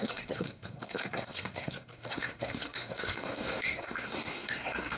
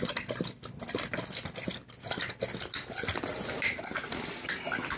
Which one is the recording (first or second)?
second